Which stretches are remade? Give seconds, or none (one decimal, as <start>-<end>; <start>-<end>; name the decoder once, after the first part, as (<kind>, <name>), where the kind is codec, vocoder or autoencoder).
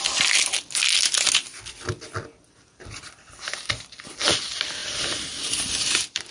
4.8-6.3 (vocoder, BigVGAN v2)